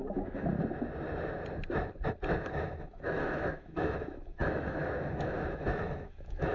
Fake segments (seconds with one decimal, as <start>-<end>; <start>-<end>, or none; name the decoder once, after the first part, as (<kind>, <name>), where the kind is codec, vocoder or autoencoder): 0.0-0.5 (autoencoder, DAC-VAE); 2.4-6.5